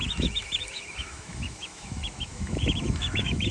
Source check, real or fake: fake